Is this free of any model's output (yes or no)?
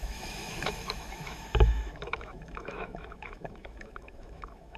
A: no